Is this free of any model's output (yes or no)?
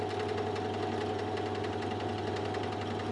yes